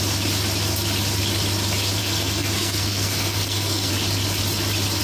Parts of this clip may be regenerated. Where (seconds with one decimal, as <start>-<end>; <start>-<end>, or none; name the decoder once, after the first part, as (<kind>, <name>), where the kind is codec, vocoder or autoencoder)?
2.0-3.9 (codec, SNAC)